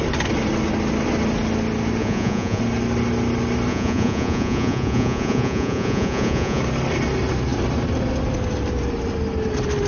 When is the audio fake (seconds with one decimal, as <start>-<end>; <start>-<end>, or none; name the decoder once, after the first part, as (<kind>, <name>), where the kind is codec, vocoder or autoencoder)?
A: 2.0-2.6 (vocoder, Vocos); 3.7-6.6